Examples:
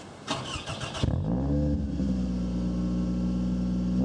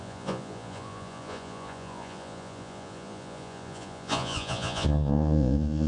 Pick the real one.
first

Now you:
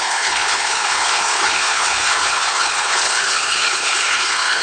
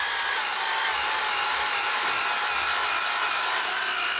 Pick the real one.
second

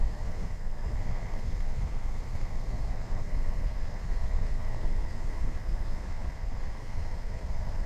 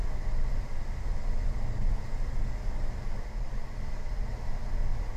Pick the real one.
second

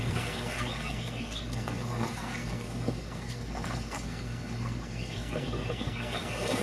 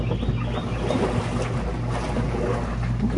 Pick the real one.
second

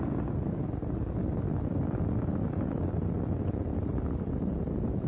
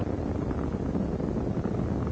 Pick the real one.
second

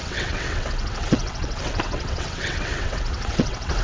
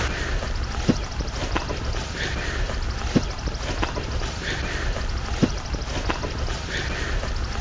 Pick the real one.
second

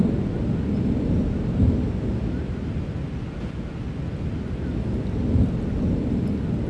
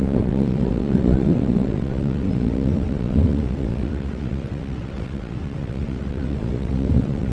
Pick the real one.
first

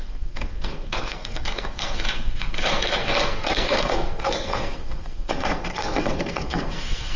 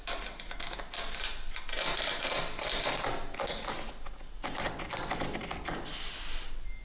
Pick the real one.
second